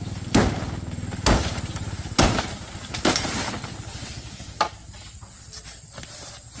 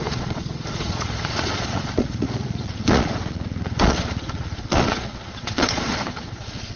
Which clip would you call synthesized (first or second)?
second